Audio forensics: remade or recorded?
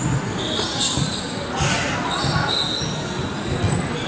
recorded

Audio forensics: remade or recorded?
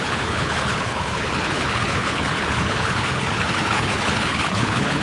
remade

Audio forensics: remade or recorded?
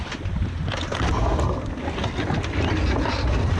recorded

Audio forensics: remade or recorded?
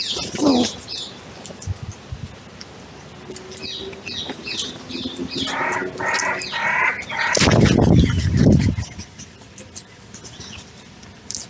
recorded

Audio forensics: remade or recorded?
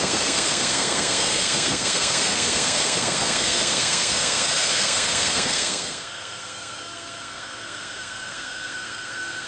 remade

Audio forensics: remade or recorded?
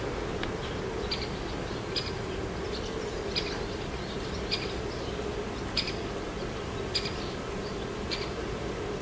recorded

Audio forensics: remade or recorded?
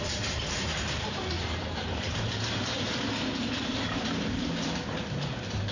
remade